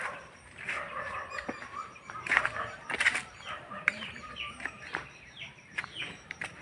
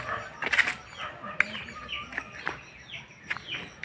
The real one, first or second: second